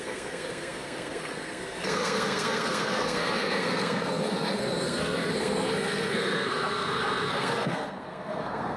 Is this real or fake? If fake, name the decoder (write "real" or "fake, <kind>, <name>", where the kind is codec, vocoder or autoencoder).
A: fake, codec, SNAC